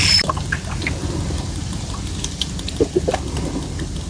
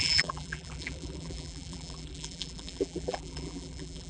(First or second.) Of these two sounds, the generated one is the second